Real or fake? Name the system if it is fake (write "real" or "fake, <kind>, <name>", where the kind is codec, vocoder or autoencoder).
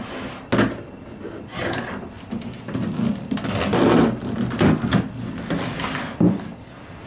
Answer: real